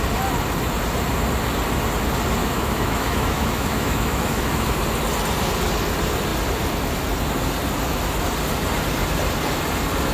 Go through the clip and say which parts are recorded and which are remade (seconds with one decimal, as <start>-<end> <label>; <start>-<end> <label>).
0.0-2.4 recorded; 2.4-4.7 remade; 4.7-10.1 recorded